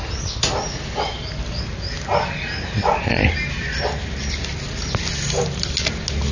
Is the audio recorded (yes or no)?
yes